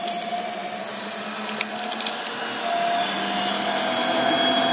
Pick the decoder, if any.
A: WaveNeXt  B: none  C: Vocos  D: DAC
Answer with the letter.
B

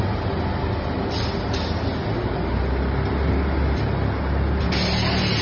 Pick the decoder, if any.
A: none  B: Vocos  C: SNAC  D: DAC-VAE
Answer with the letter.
A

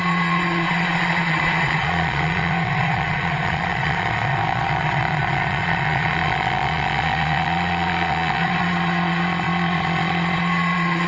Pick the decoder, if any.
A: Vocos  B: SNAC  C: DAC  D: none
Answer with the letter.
A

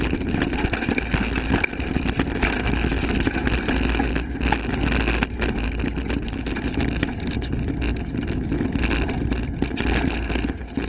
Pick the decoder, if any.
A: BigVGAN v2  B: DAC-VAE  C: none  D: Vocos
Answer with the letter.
C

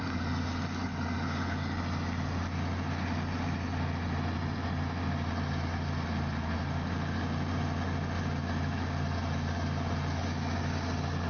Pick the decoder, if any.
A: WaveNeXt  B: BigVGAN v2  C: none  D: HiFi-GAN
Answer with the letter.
C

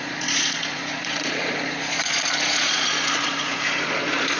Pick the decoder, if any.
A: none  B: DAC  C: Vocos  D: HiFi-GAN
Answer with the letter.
C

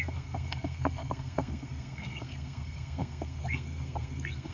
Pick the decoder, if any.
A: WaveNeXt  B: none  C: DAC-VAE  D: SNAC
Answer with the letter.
D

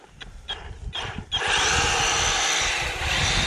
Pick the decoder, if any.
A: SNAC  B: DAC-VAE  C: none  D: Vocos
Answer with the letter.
C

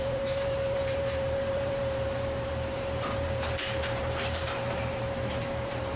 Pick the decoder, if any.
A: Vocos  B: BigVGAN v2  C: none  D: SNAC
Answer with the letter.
B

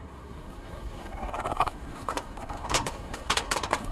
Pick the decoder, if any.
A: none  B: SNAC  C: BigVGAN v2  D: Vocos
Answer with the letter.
B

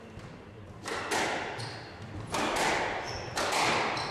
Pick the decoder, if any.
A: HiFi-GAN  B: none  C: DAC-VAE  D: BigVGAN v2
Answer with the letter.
B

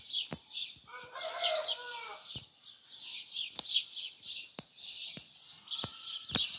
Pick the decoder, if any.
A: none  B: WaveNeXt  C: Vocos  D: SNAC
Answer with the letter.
A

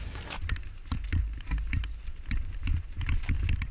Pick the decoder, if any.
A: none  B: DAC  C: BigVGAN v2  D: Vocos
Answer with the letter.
A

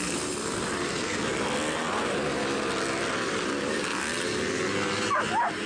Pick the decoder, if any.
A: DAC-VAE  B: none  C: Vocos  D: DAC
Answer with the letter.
B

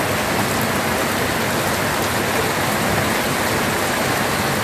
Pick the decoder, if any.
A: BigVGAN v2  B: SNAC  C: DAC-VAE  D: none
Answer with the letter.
D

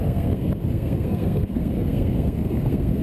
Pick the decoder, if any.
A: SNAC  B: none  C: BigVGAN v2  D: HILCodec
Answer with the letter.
A